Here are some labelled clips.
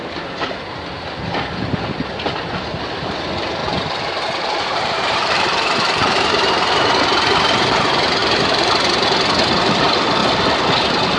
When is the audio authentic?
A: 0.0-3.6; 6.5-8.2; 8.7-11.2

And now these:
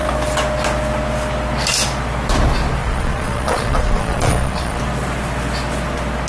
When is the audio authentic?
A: 0.0-2.8; 4.8-6.3

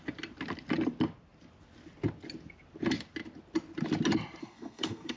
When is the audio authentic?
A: 0.0-4.4

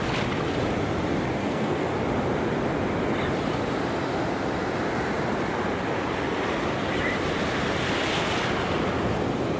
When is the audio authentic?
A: 0.0-1.4; 1.9-9.6